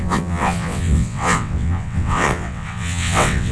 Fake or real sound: fake